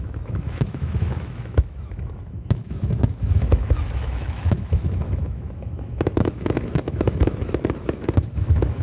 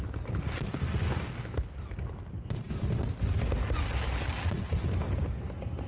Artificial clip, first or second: first